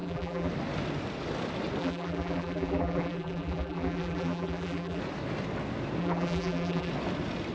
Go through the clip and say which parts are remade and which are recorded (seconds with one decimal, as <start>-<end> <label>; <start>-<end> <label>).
0.0-0.5 remade; 0.5-1.8 recorded; 1.8-5.0 remade; 5.0-6.0 recorded; 6.0-6.9 remade; 6.9-7.5 recorded